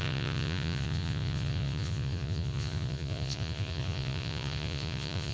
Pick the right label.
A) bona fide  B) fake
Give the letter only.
B